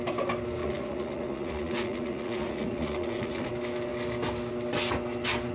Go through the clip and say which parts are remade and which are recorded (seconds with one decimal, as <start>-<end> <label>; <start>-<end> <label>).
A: 0.0-0.6 recorded; 0.6-3.5 remade; 3.5-5.5 recorded